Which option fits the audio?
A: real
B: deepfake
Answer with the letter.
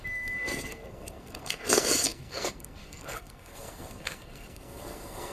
B